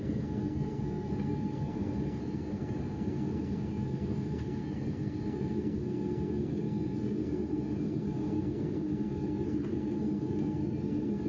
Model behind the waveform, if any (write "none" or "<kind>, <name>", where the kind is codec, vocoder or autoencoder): codec, SNAC